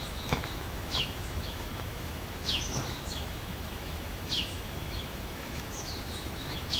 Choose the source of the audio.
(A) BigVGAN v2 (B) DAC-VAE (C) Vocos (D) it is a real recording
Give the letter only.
B